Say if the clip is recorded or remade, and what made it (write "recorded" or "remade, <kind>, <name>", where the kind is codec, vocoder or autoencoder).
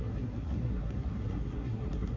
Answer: remade, codec, SNAC